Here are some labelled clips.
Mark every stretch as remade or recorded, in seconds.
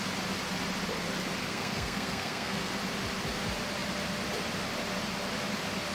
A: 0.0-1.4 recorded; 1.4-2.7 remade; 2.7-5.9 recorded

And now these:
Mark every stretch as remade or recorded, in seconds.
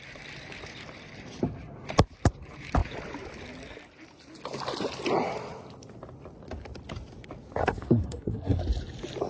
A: 0.0-7.6 recorded; 7.6-8.6 remade; 8.6-9.3 recorded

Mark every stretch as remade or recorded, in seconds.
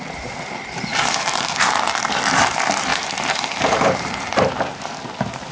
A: 0.0-0.9 recorded; 0.9-1.5 remade; 1.5-2.9 recorded; 2.9-5.5 remade